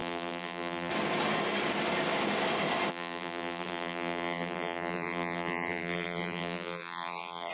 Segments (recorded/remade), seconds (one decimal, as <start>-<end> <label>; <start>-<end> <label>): 0.0-0.9 remade; 0.9-2.9 recorded; 2.9-7.5 remade